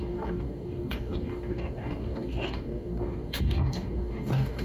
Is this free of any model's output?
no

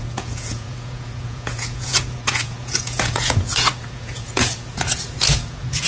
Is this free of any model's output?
no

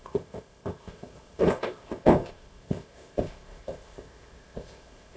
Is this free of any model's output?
no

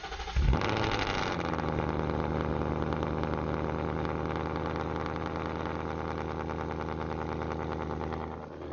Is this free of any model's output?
yes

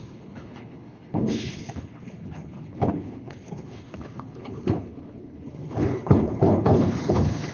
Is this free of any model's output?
no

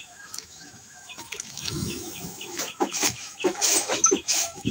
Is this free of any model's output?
no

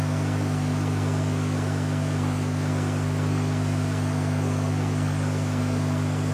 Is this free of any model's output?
no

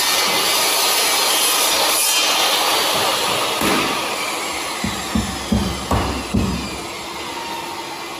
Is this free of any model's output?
yes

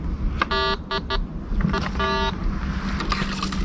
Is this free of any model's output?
yes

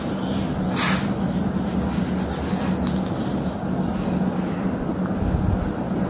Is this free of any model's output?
yes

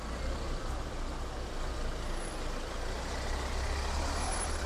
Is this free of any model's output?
yes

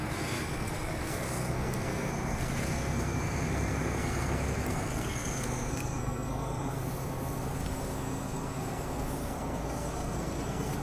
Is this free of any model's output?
no